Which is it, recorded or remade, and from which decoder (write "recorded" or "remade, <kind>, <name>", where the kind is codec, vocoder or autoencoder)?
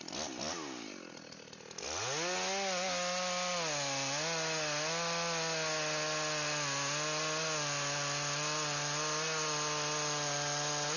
recorded